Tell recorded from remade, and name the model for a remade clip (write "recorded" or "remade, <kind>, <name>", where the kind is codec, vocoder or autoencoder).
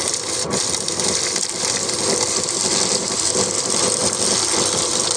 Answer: remade, vocoder, BigVGAN v2